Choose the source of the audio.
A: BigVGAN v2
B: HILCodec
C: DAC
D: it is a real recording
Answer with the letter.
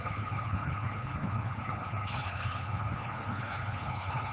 B